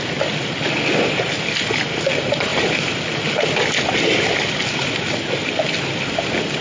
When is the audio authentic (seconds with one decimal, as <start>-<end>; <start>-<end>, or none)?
0.0-2.5; 5.9-6.6

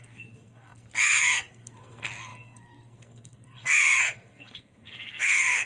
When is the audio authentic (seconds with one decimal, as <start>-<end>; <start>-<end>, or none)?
none

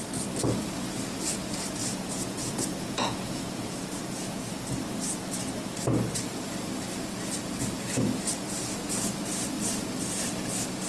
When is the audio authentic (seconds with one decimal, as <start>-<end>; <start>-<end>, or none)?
0.0-1.8; 4.4-10.9

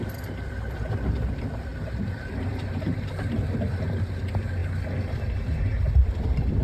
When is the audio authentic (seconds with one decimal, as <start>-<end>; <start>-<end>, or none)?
1.7-2.7; 4.6-5.9